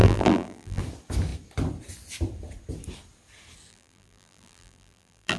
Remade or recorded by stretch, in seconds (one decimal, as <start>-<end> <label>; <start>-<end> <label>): 0.0-0.8 remade; 0.8-3.7 recorded; 3.7-5.4 remade